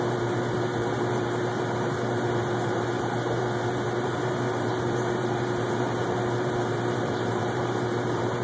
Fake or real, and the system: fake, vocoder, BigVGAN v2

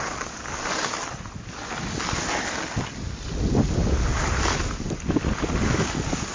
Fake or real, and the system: real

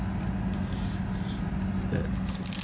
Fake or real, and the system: real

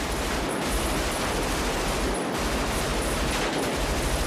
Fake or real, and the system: fake, vocoder, BigVGAN v2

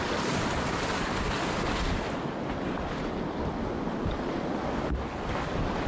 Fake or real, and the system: real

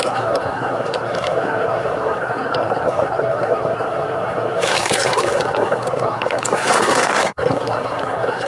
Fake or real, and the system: fake, codec, SNAC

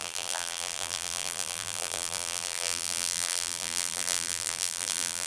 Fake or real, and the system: fake, vocoder, BigVGAN v2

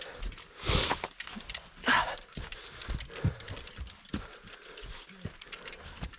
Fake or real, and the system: real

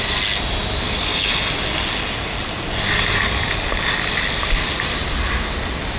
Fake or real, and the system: real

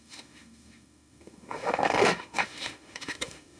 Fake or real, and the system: fake, autoencoder, DAC-VAE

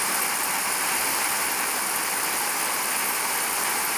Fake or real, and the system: real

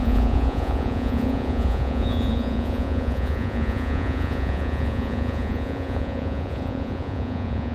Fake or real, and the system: fake, vocoder, Vocos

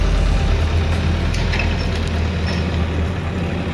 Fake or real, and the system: real